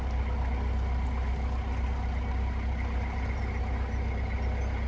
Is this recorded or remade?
recorded